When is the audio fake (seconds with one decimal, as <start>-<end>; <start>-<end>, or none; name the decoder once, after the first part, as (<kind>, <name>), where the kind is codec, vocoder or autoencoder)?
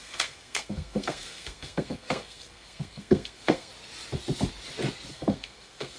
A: 0.0-3.7 (codec, SNAC); 5.1-6.0